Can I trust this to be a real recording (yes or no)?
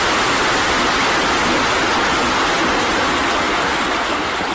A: yes